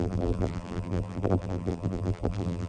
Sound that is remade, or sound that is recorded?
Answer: remade